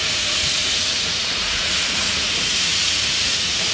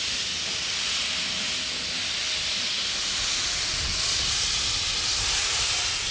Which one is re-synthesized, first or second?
first